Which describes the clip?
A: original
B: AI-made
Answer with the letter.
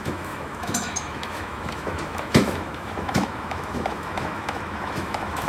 B